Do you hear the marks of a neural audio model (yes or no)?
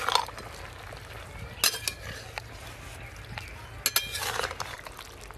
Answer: no